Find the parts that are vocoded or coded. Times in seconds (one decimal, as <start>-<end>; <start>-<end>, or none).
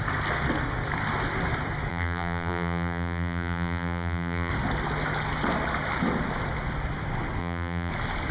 1.9-4.5; 7.4-7.9